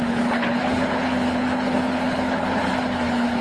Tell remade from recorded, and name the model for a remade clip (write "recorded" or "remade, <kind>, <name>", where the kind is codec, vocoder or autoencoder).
remade, codec, HILCodec